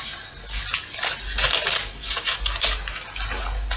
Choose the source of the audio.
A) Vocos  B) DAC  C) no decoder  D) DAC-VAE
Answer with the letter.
C